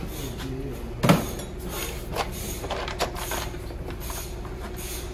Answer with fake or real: real